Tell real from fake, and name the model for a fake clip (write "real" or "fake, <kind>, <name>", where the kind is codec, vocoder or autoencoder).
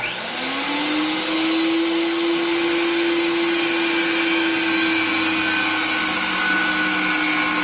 real